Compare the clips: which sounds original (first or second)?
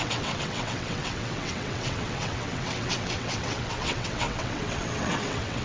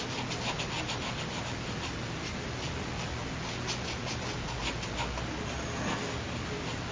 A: second